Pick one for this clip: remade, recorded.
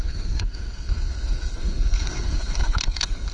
remade